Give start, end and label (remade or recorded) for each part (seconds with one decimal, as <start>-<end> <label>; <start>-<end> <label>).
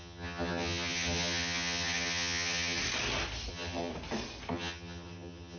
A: 0.0-2.8 remade; 2.8-3.5 recorded; 3.5-3.9 remade; 3.9-4.5 recorded; 4.5-5.6 remade